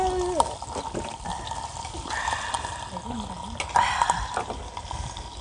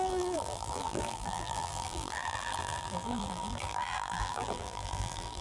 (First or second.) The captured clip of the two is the first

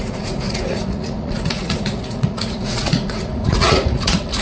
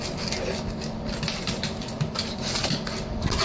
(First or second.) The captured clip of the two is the second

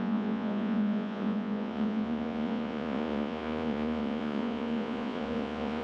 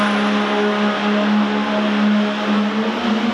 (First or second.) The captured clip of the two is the second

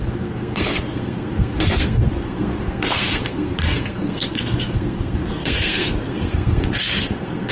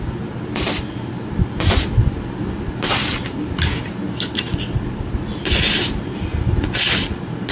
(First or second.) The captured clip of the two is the second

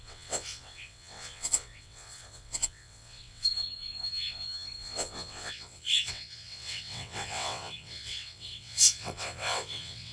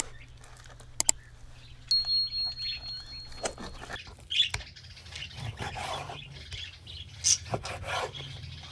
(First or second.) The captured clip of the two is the second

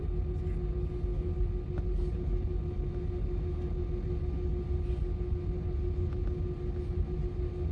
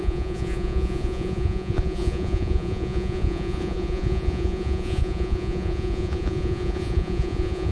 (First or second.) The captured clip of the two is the first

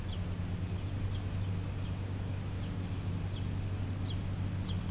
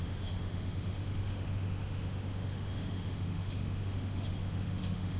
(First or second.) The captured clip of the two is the first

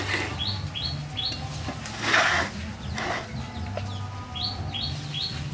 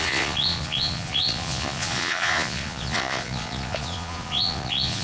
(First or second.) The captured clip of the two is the first